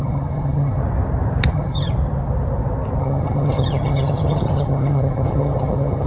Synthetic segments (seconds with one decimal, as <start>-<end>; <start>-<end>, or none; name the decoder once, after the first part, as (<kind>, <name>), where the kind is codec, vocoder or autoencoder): 0.0-0.8 (vocoder, HiFi-GAN); 1.5-1.9; 3.0-6.1